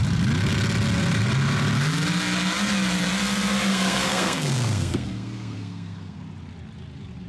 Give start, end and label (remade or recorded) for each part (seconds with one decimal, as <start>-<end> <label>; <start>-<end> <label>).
0.0-3.7 recorded; 3.7-6.2 remade; 6.2-7.3 recorded